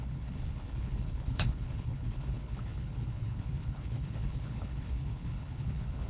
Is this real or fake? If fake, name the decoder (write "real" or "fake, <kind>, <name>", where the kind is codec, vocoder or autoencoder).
fake, codec, HILCodec